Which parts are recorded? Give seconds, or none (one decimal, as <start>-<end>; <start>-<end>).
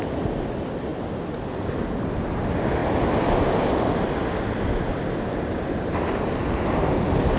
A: 0.0-7.4